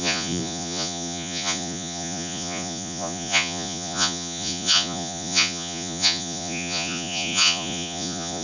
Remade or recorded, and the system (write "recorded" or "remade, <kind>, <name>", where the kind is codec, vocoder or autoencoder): remade, vocoder, Vocos